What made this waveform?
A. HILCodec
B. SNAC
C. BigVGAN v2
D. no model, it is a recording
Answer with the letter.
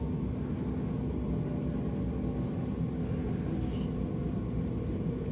D